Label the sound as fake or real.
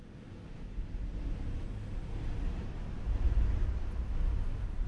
real